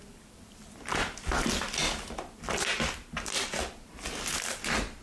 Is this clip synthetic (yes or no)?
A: no